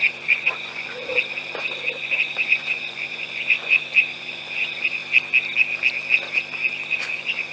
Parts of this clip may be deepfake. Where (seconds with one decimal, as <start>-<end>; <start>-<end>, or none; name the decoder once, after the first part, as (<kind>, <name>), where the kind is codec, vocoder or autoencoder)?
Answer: 0.0-1.1 (vocoder, Vocos); 2.0-5.0; 6.9-7.5